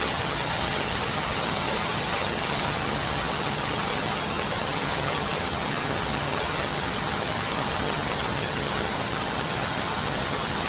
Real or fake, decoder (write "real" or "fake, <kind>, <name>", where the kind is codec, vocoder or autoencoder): fake, vocoder, HiFi-GAN